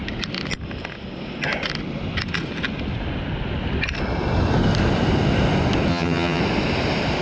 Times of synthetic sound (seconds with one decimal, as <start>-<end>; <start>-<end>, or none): 5.9-6.4